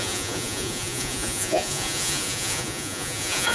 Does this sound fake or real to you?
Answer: fake